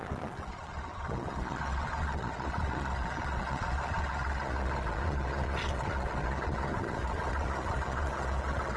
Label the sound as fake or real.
fake